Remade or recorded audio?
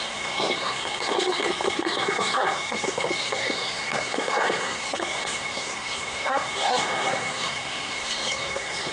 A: remade